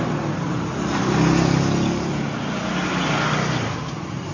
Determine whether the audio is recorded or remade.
recorded